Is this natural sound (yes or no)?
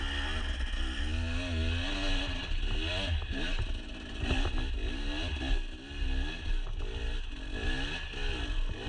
yes